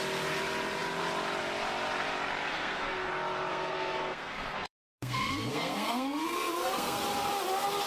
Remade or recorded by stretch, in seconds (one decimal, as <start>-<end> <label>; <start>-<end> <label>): 0.0-2.5 recorded; 2.5-3.1 remade; 3.1-3.5 recorded; 3.5-7.0 remade; 7.0-7.9 recorded